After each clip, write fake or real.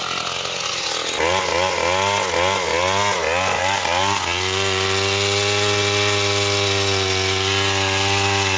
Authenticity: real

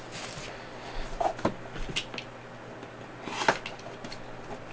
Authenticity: real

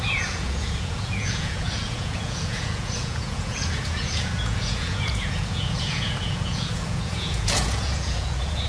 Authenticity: fake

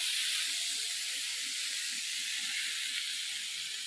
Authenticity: real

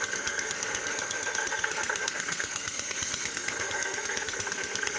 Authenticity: fake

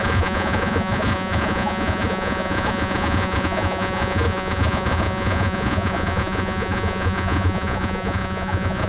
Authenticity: fake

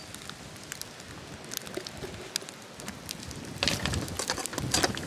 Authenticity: real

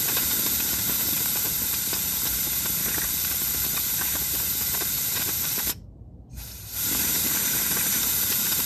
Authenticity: fake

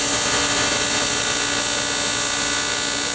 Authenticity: real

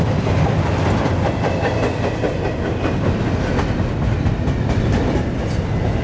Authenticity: real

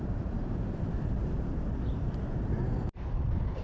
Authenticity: fake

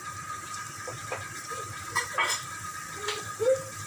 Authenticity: fake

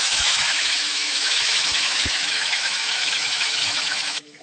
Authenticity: fake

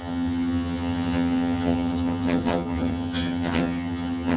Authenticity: fake